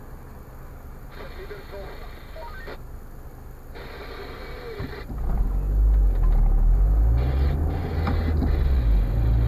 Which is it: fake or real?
real